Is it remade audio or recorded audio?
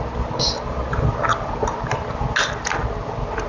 recorded